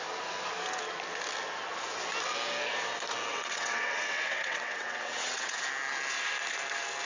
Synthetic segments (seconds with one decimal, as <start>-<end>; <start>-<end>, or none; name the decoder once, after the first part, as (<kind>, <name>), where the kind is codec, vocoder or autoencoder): 3.3-5.6 (vocoder, WaveNeXt)